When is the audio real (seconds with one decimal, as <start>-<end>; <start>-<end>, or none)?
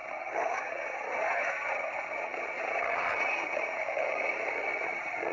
none